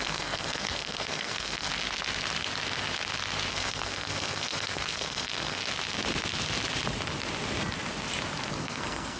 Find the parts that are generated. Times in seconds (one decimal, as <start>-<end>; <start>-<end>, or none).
0.0-1.7; 3.5-5.6; 8.5-9.2